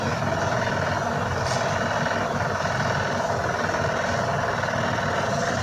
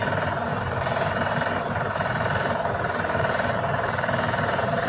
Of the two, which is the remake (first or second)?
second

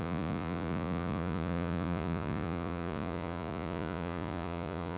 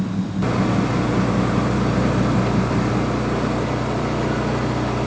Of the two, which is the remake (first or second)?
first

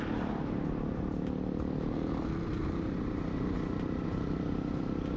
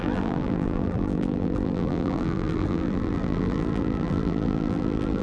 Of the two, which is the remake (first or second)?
second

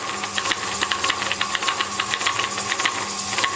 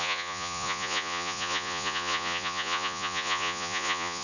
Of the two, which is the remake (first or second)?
second